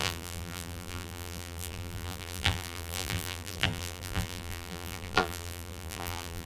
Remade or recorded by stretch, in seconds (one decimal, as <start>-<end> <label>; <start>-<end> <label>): 0.0-6.5 remade